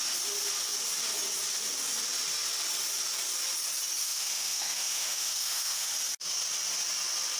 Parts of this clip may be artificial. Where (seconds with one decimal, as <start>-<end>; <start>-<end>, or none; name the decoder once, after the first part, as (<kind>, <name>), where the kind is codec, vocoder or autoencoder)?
4.0-5.9 (autoencoder, DAC-VAE)